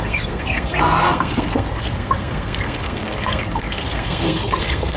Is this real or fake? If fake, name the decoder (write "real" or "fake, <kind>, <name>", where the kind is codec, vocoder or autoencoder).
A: fake, codec, SNAC